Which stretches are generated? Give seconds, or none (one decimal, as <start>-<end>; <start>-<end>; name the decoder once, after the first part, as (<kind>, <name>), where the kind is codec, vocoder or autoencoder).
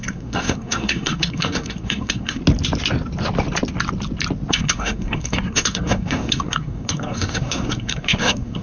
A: 0.0-2.4 (codec, SNAC); 4.5-8.6